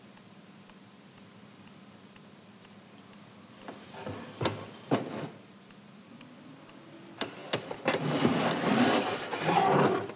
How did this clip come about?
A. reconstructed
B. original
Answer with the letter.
B